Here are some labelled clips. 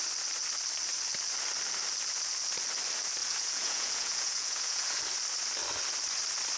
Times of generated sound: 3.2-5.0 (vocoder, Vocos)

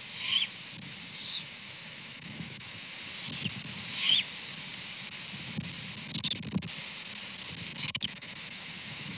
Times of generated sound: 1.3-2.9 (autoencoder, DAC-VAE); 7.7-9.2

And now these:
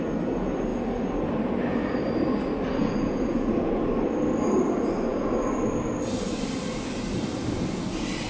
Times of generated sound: 2.8-3.7 (vocoder, Vocos)